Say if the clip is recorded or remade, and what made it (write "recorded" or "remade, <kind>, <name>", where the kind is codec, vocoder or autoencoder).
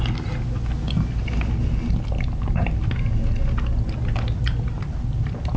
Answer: recorded